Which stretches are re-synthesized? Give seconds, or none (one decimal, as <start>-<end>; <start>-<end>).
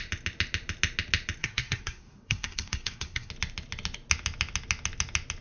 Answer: 1.4-3.3